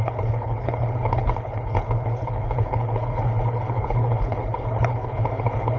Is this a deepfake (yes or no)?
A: yes